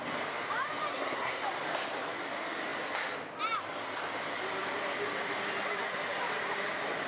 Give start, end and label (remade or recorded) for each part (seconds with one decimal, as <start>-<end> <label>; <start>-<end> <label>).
0.0-0.9 recorded; 0.9-1.4 remade; 1.4-7.1 recorded